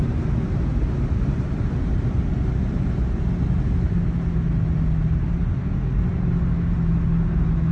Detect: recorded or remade recorded